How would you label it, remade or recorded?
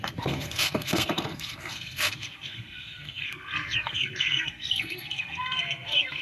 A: remade